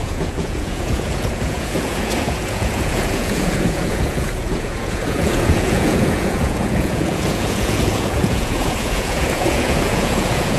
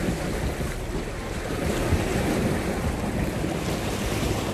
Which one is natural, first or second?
second